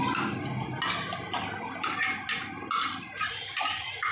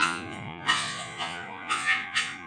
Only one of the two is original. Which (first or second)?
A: first